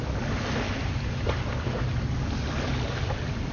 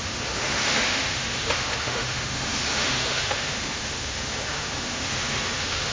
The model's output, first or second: second